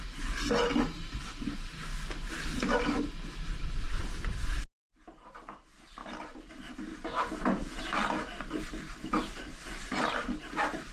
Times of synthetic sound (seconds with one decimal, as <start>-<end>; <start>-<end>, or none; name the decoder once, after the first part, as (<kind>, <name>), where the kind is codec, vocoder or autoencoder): 6.9-7.8 (vocoder, Vocos)